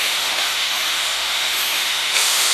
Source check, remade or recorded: remade